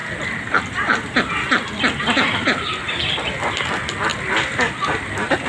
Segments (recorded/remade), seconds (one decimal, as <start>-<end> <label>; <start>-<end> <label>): 0.0-5.5 recorded